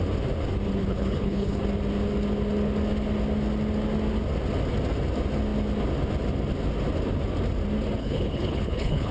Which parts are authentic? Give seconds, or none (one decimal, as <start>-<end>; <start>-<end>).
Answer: 0.0-0.8; 1.6-8.0